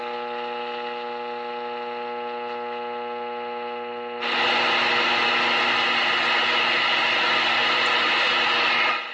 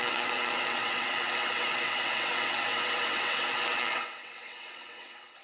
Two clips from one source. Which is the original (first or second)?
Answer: first